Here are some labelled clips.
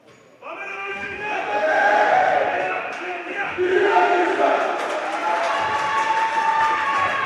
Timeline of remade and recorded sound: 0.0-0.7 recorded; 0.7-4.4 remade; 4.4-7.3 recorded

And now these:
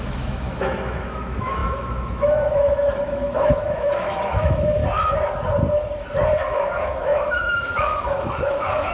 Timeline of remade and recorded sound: 0.0-4.8 remade; 4.8-6.4 recorded; 6.4-8.9 remade

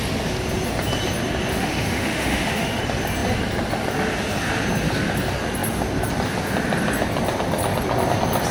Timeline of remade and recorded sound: 0.0-1.5 recorded; 1.5-2.8 remade; 2.8-8.5 recorded

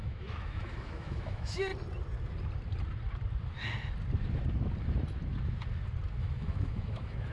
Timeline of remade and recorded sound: 0.0-1.7 remade; 1.7-6.1 recorded; 6.1-7.3 remade